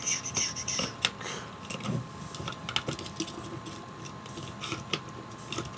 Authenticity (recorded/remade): recorded